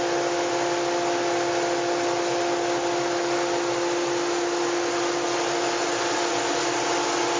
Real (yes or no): yes